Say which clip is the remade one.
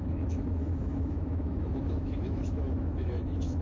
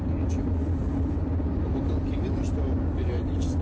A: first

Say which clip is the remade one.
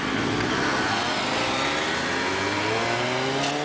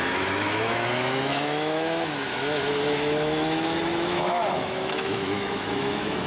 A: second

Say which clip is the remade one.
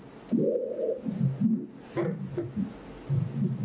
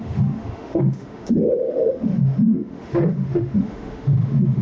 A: second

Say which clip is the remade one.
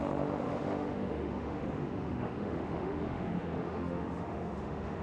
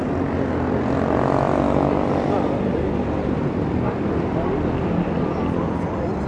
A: first